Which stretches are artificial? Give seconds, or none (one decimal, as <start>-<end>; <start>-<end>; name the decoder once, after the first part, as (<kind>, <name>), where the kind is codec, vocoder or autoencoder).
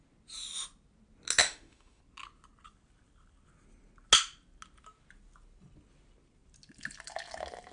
1.4-2.0 (autoencoder, DAC-VAE)